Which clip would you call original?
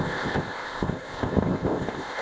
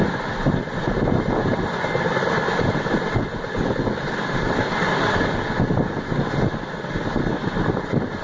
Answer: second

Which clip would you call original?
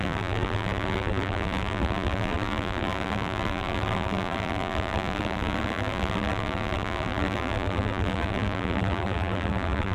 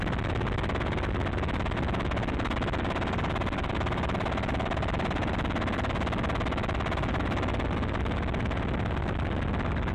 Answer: second